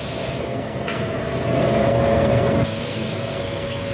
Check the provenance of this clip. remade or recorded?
remade